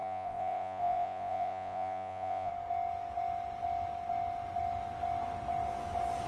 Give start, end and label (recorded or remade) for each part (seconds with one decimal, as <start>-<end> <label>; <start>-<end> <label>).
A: 0.0-2.5 remade; 2.5-6.3 recorded